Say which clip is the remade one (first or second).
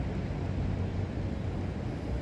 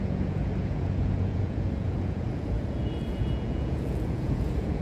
second